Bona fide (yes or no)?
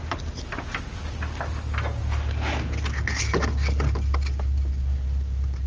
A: yes